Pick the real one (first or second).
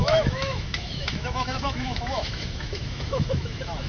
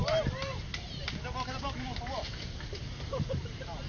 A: second